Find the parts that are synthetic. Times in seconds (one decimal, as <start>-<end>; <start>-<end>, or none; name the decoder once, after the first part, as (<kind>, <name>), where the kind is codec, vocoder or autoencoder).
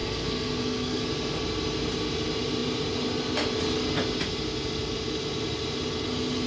0.0-1.0 (codec, SNAC)